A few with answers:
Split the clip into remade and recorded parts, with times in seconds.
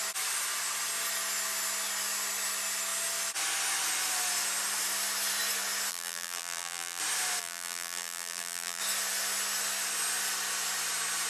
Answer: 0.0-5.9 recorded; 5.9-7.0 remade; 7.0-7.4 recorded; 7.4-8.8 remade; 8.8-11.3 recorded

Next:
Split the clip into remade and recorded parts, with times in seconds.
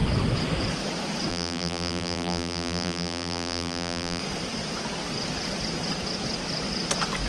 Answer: 0.0-1.3 recorded; 1.3-4.2 remade; 4.2-7.3 recorded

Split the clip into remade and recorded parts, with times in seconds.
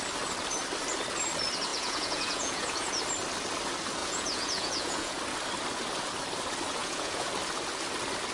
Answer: 0.0-1.7 recorded; 1.7-3.0 remade; 3.0-4.0 recorded; 4.0-5.2 remade; 5.2-6.8 recorded; 6.8-7.3 remade; 7.3-8.3 recorded